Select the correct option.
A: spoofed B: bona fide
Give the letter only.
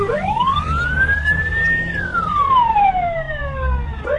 B